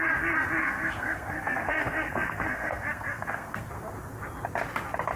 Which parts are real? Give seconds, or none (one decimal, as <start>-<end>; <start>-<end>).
0.0-0.6; 3.7-5.2

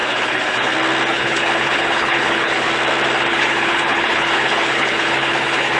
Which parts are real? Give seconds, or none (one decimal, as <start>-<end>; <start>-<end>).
0.7-1.1; 2.7-3.3

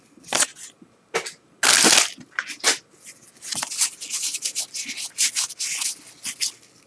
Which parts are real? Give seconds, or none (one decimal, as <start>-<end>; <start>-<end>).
0.0-6.9

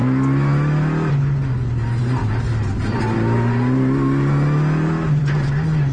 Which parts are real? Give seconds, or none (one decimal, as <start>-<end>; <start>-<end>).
0.0-5.9

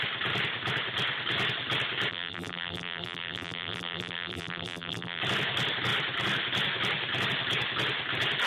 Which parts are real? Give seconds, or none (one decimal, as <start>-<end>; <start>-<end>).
0.0-2.1; 5.2-8.5

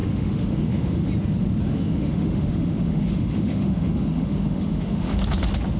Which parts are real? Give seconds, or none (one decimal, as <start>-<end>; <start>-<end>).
1.1-1.7; 5.2-5.8

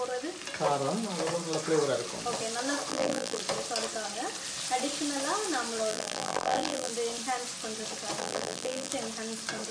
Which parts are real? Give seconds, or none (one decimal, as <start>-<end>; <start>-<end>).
0.0-2.9; 3.4-5.9; 6.9-8.2; 8.9-9.7

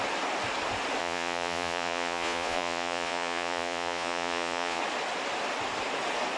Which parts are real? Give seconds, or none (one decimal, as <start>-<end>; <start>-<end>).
0.0-1.0; 4.8-6.4